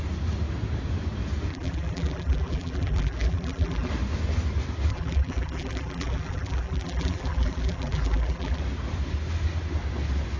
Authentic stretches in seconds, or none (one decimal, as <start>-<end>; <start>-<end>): 0.0-1.5; 3.9-4.9; 8.6-10.4